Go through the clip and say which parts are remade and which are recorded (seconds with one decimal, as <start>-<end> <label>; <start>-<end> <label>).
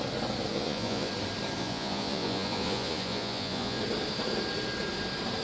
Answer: 0.0-0.5 recorded; 0.5-1.1 remade; 1.1-1.6 recorded; 1.6-3.8 remade; 3.8-5.4 recorded